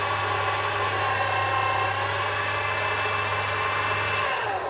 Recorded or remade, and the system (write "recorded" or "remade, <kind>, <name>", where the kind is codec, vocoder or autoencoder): recorded